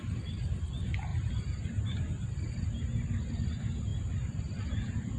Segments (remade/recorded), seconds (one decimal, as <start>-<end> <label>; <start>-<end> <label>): 0.0-5.2 recorded